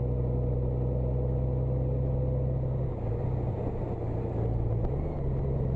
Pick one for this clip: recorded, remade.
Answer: recorded